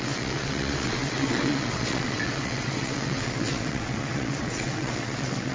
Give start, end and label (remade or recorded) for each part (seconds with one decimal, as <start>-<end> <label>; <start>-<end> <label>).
0.0-5.5 remade